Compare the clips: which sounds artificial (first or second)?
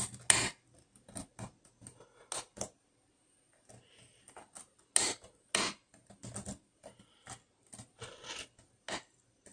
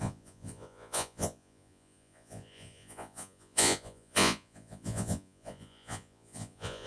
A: second